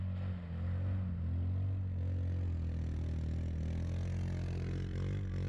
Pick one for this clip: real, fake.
real